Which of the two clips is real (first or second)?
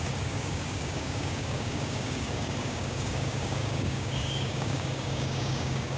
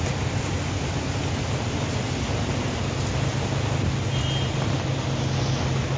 second